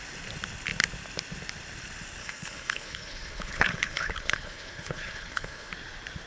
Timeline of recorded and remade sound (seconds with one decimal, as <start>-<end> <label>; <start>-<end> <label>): 0.0-2.2 recorded; 2.2-5.7 remade; 5.7-6.3 recorded